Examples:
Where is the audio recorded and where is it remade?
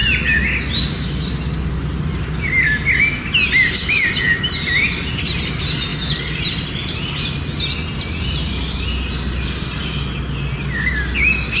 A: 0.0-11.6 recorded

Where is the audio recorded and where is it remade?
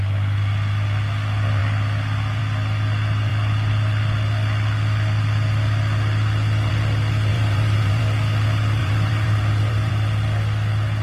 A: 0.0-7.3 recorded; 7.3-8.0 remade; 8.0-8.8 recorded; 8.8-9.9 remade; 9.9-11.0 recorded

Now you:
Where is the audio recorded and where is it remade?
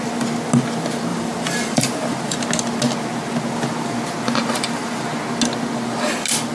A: 0.0-1.1 recorded; 1.1-2.4 remade; 2.4-4.4 recorded; 4.4-5.0 remade; 5.0-6.5 recorded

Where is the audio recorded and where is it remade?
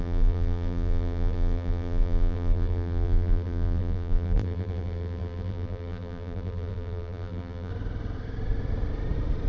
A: 0.0-7.7 remade; 7.7-9.5 recorded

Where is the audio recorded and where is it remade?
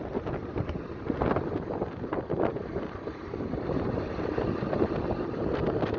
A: 0.0-0.4 recorded; 0.4-1.2 remade; 1.2-6.0 recorded